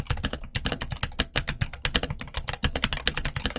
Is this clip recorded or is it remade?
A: recorded